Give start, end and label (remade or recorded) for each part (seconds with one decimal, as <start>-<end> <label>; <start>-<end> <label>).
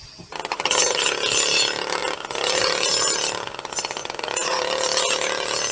0.0-4.0 recorded; 4.0-4.6 remade; 4.6-5.7 recorded